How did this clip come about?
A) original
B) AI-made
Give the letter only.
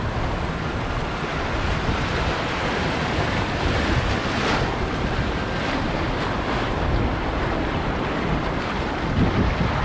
A